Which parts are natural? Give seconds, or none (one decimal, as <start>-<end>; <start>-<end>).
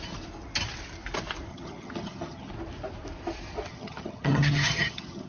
0.0-1.5; 2.5-3.7